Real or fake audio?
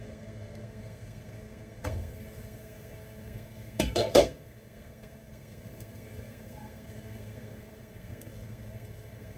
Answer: fake